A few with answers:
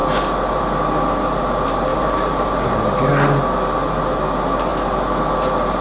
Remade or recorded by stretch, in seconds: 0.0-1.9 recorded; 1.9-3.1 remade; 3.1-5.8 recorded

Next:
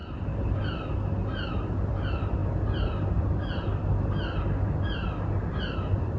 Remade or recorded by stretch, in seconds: 0.0-1.5 recorded; 1.5-2.4 remade; 2.4-5.6 recorded; 5.6-6.2 remade

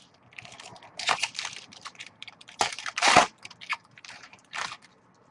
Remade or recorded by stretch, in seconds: 0.0-0.9 recorded; 0.9-3.3 remade; 3.3-3.7 recorded; 3.7-4.6 remade; 4.6-5.3 recorded

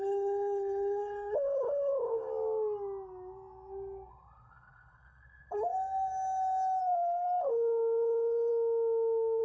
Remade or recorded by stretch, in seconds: 0.0-2.3 remade; 2.3-4.1 recorded; 4.1-5.7 remade; 5.7-6.8 recorded; 6.8-8.5 remade; 8.5-9.4 recorded